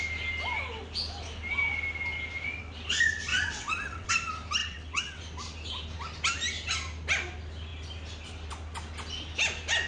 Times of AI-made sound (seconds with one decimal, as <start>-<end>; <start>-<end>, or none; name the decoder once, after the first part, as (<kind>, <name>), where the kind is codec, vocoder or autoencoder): 3.3-4.1 (vocoder, WaveNeXt); 4.6-5.2